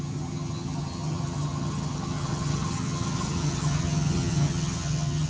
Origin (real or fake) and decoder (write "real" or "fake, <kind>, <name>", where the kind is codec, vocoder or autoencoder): fake, vocoder, HiFi-GAN